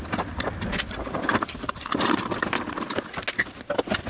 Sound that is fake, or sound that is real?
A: real